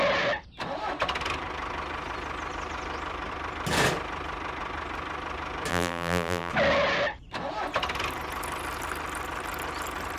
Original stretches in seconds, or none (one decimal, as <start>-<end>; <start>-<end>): 0.0-5.7; 6.5-10.2